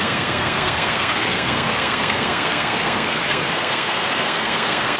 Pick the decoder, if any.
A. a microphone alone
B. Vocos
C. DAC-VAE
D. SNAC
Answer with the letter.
D